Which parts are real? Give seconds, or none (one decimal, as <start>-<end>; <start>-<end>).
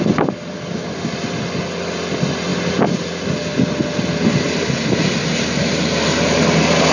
0.0-6.9